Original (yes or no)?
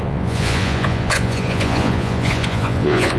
no